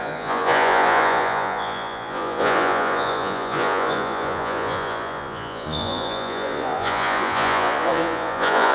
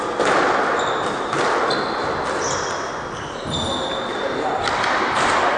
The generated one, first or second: first